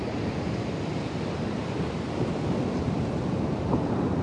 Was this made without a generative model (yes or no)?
yes